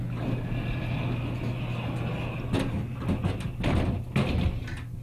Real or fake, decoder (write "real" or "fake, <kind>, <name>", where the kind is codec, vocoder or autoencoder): real